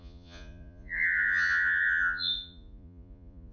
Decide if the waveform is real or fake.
fake